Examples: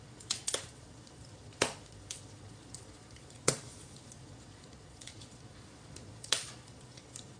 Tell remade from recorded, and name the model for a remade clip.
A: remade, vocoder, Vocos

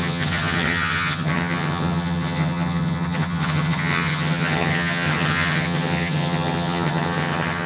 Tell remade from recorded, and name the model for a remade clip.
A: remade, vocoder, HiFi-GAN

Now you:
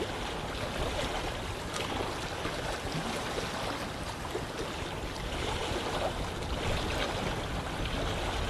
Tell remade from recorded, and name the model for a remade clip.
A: recorded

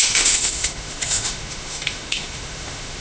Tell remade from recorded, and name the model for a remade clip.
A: remade, autoencoder, DAC-VAE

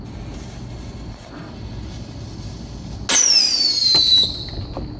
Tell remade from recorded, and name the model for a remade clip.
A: recorded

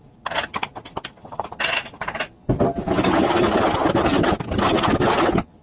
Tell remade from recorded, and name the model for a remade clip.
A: recorded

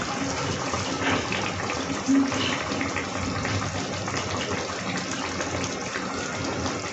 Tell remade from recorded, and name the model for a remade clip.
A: recorded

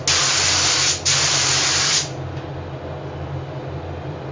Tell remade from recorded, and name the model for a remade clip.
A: recorded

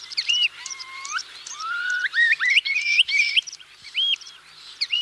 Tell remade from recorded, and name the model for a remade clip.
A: remade, vocoder, BigVGAN v2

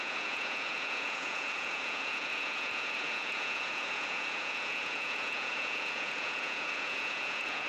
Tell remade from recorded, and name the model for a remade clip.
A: remade, vocoder, Vocos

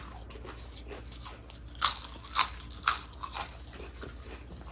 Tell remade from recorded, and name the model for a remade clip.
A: recorded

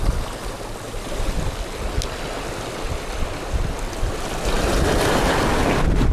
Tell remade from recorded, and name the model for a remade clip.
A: recorded